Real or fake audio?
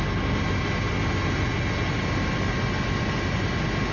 real